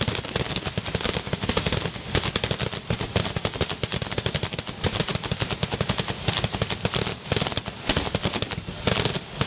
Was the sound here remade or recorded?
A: recorded